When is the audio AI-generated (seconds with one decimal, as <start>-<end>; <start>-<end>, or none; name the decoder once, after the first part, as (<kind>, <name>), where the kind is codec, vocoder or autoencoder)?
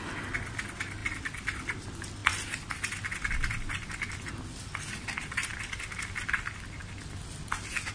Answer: none